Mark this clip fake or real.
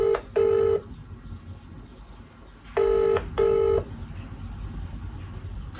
real